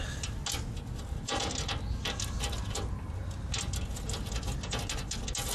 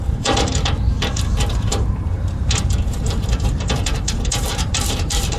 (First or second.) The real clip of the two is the first